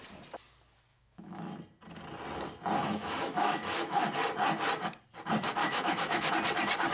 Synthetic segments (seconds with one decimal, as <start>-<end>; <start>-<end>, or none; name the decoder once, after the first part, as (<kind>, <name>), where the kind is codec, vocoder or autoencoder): 0.9-1.5 (autoencoder, DAC-VAE); 2.8-4.1; 5.6-6.3